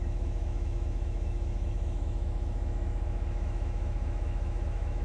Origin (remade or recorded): remade